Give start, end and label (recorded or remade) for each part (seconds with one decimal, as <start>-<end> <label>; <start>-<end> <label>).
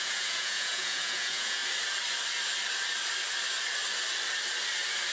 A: 0.0-1.6 remade; 1.6-5.1 recorded